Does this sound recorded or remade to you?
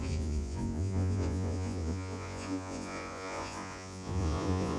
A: remade